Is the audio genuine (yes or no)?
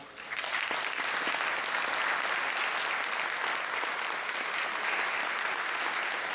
yes